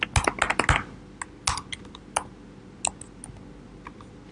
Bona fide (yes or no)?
yes